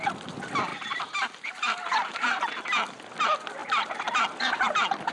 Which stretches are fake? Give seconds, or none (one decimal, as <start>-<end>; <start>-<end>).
0.7-2.4